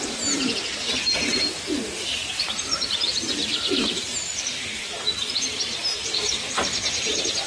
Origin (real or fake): fake